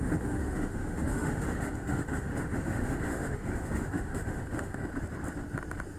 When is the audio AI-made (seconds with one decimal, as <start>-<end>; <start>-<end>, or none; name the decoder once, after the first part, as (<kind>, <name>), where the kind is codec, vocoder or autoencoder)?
0.0-4.9 (autoencoder, DAC-VAE)